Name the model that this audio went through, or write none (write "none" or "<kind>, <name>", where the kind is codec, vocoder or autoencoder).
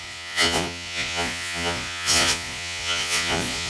vocoder, Vocos